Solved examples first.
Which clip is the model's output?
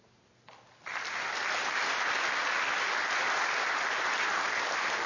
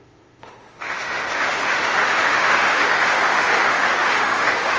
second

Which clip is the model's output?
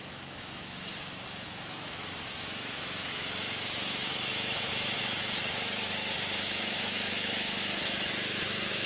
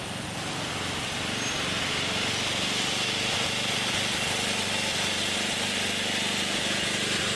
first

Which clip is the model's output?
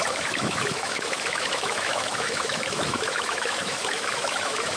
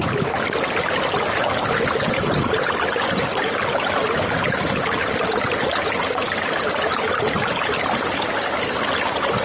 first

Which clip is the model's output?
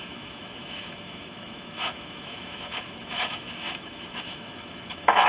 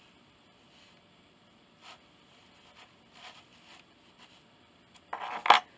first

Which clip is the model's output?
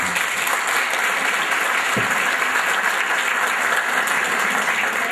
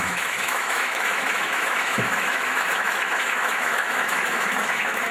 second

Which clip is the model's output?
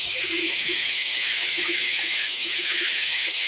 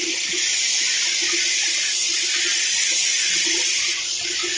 first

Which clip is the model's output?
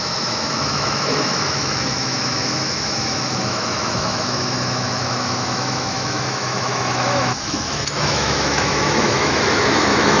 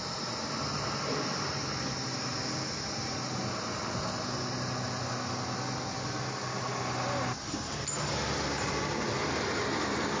first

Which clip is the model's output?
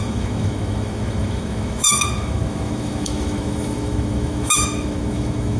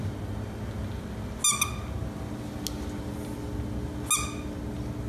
first